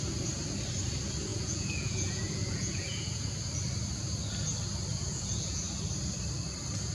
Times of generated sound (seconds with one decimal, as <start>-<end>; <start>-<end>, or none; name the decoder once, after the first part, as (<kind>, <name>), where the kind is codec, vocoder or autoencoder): 1.3-3.2 (vocoder, Vocos); 4.9-5.6